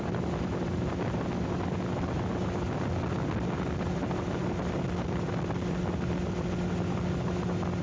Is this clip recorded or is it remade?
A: recorded